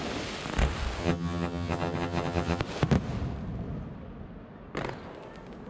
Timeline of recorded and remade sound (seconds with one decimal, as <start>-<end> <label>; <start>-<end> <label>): 0.0-1.0 recorded; 1.0-2.6 remade; 2.6-5.7 recorded